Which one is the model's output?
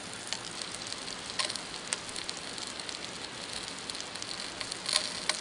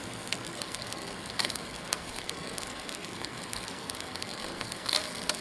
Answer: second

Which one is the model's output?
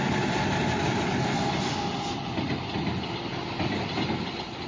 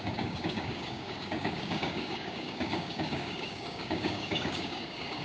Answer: second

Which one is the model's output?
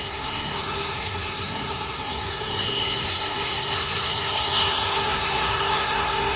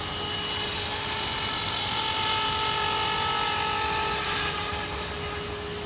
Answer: first